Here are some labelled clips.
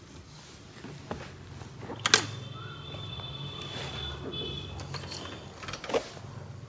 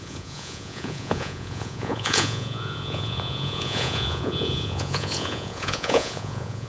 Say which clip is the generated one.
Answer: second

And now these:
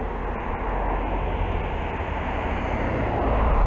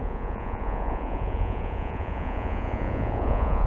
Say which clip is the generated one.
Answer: second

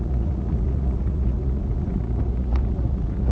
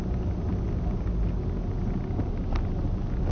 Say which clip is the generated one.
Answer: first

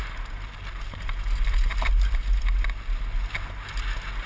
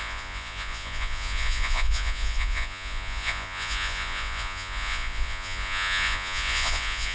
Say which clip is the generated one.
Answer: second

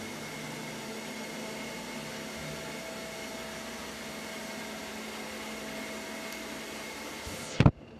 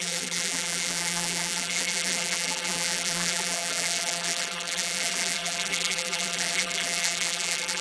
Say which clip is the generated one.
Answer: second